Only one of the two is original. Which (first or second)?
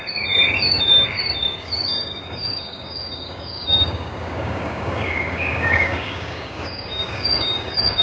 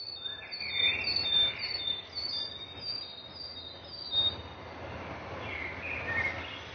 second